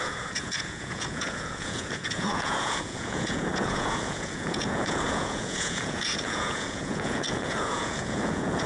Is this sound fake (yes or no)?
yes